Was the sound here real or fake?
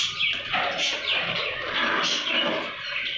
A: fake